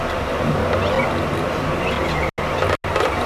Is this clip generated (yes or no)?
no